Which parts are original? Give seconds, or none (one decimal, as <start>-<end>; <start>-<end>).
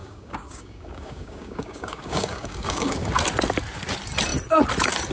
3.1-5.1